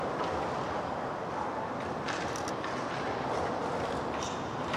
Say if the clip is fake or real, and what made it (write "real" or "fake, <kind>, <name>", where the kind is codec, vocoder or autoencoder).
real